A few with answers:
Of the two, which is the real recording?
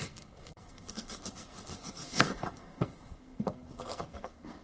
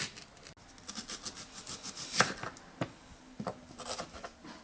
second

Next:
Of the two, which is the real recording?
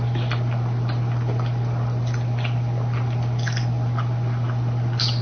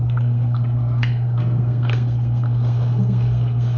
first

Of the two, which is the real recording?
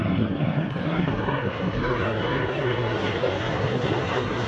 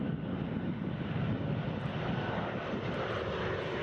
second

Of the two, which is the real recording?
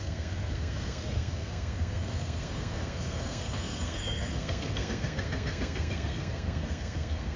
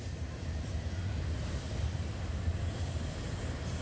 second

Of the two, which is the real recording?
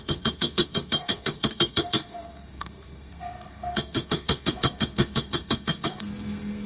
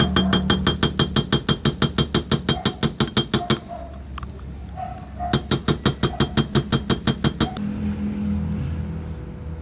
second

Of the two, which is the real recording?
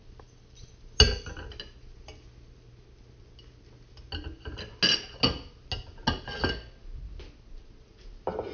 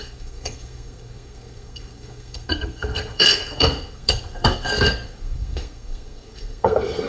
first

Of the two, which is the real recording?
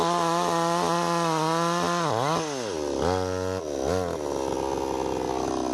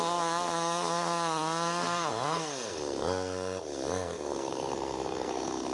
first